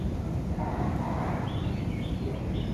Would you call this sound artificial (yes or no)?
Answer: no